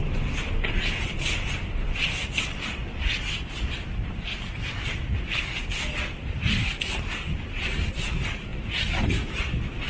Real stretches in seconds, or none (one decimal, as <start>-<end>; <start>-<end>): 0.0-9.9